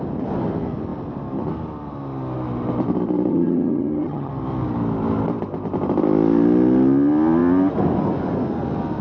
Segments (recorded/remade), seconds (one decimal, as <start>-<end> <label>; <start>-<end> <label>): 0.0-3.3 recorded; 3.3-4.3 remade; 4.3-9.0 recorded